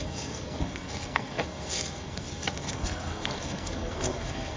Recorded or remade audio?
remade